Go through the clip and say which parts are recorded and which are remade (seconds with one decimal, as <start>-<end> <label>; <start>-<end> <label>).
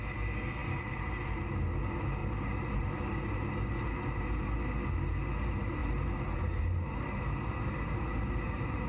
0.0-0.6 recorded; 0.6-1.4 remade; 1.4-2.2 recorded; 2.2-2.9 remade; 2.9-5.8 recorded; 5.8-7.2 remade; 7.2-8.9 recorded